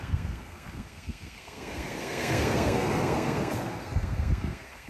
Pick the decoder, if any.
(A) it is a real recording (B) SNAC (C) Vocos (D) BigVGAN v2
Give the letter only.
B